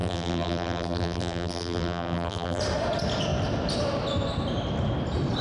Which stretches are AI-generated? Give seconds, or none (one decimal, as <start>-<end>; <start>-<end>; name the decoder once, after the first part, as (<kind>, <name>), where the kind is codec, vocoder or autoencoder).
0.0-2.6 (vocoder, BigVGAN v2)

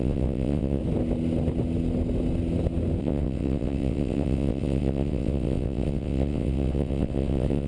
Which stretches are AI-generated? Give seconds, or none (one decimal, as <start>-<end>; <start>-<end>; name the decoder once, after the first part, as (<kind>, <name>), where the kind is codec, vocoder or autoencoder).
0.0-0.8 (vocoder, WaveNeXt); 3.0-7.7

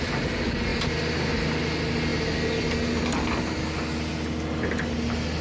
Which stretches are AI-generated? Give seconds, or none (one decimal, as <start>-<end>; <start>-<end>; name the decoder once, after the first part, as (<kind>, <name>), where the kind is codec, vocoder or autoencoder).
none